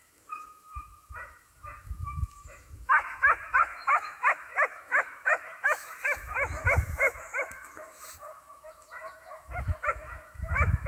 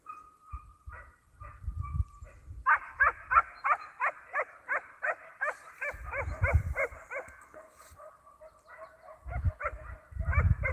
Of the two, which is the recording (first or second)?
second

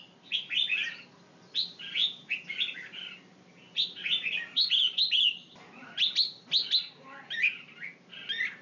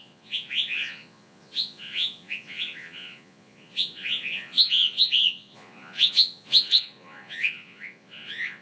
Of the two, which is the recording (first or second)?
first